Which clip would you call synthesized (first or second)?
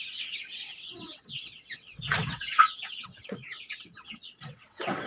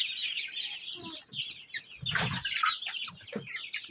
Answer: first